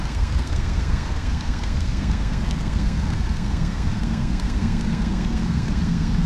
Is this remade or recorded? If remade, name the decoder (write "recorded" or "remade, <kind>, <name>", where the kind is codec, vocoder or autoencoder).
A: remade, codec, SNAC